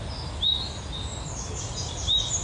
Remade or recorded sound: recorded